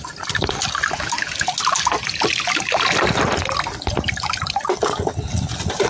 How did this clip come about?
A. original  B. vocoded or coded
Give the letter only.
A